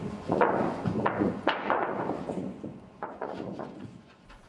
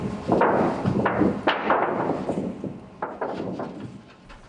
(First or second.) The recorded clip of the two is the second